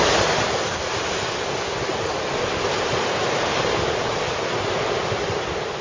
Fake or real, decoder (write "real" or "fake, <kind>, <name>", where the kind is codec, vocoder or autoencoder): real